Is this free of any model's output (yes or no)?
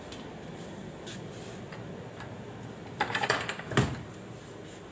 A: yes